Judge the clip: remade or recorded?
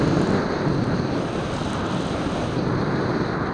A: recorded